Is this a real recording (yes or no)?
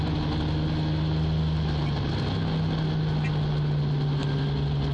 yes